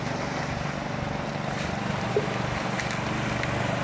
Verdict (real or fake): real